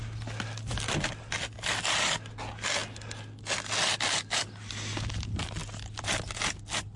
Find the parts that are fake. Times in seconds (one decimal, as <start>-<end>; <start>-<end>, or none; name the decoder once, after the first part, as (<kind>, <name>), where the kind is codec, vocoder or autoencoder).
none

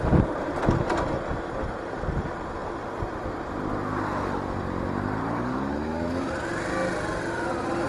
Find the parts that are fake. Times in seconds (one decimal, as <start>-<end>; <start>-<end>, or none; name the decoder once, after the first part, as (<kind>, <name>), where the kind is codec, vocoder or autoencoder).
5.2-6.3 (codec, DAC)

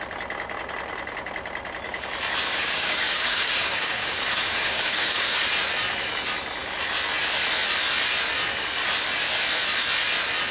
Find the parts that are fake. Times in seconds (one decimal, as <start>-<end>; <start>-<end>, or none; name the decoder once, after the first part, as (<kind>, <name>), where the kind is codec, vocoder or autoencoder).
2.5-5.4 (codec, DAC)

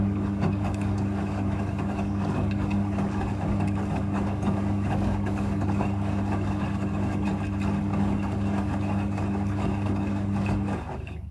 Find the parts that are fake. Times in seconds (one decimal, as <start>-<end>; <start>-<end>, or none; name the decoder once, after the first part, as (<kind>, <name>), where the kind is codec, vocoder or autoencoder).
0.0-7.3 (codec, DAC); 7.8-11.3

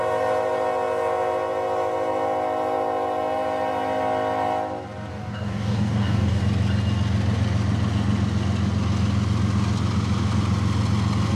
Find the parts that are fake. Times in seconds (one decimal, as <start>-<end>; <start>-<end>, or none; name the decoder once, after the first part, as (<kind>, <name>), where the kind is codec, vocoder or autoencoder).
5.1-6.4 (codec, DAC)

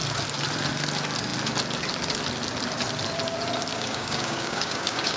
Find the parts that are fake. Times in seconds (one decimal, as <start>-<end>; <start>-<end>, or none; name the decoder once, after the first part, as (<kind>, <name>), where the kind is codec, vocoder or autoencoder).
3.7-5.2 (codec, DAC)

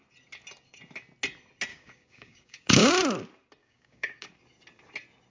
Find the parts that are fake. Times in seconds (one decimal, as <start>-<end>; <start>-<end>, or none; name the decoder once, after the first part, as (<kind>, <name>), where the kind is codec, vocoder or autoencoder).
1.7-2.9 (codec, DAC); 3.6-4.3